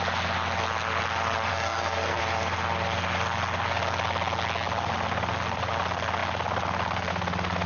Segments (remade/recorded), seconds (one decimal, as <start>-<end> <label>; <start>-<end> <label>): 0.0-1.5 recorded; 1.5-2.2 remade; 2.2-7.7 recorded